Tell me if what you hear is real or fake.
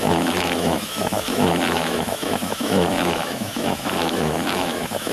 fake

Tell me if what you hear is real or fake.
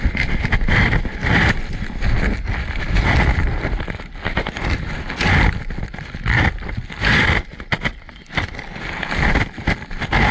real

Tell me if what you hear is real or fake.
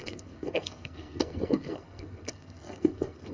fake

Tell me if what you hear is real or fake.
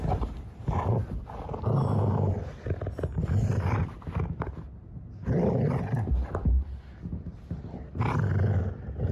real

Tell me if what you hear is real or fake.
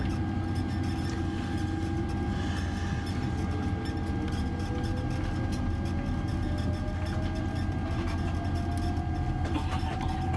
real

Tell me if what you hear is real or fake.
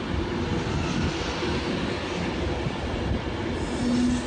real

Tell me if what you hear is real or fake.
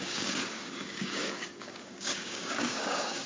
fake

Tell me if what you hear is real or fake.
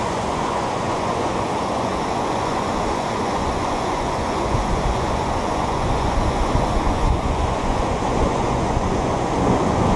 fake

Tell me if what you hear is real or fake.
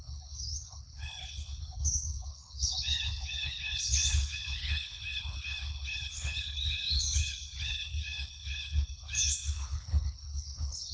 fake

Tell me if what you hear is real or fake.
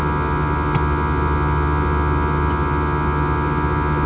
real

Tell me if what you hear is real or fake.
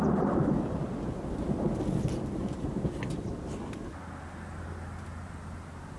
real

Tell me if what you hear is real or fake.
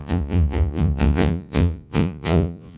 fake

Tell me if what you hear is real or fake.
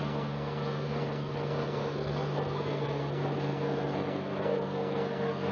fake